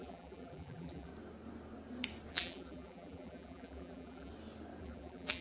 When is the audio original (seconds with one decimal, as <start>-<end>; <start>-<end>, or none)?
1.1-2.3; 4.3-4.8